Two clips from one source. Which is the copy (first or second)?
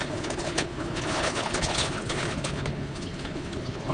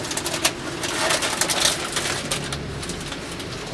first